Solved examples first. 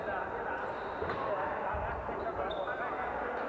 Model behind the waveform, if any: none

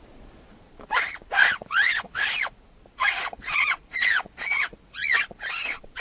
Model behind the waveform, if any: vocoder, Vocos